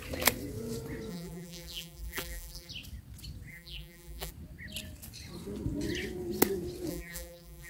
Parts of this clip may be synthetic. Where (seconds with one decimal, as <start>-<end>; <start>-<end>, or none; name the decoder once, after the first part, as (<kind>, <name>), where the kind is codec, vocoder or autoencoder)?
1.1-2.7 (vocoder, BigVGAN v2); 3.5-4.3; 6.9-7.7